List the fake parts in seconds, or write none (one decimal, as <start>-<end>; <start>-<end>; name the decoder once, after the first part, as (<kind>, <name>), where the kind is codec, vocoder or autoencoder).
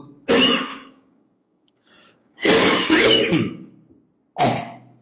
0.7-3.7 (codec, DAC)